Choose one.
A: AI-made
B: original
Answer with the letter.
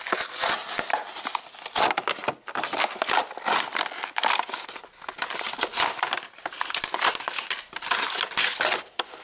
B